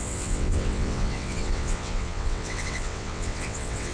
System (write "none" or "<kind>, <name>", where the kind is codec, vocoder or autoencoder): vocoder, WaveNeXt